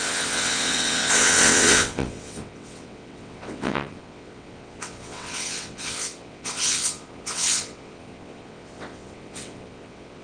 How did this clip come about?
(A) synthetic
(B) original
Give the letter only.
A